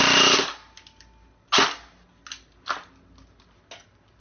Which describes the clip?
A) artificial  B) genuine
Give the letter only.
B